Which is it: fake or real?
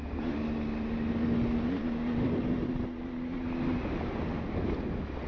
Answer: real